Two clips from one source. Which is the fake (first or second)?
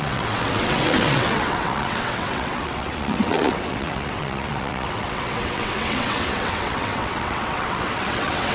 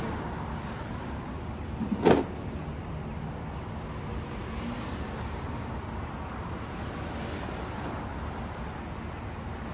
first